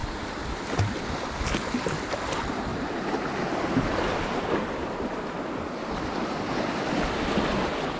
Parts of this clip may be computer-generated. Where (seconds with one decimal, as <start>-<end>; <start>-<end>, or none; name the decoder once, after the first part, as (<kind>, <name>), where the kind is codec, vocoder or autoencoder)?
2.7-4.6 (vocoder, BigVGAN v2)